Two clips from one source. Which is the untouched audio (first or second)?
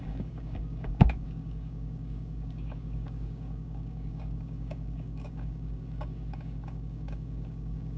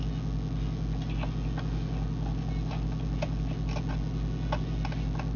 second